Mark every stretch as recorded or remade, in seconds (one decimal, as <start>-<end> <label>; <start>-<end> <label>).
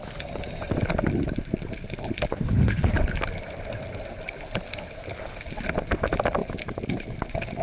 0.0-2.3 recorded; 2.3-2.9 remade; 2.9-7.6 recorded